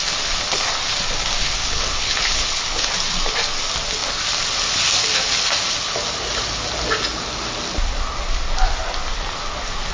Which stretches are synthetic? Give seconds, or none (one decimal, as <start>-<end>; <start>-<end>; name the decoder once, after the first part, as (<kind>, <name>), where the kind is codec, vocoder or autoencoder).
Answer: 1.4-2.9 (codec, HILCodec)